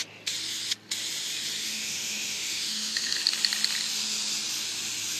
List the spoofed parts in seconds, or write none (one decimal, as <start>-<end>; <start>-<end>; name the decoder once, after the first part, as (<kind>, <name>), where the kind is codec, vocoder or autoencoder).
1.6-3.2 (autoencoder, DAC-VAE)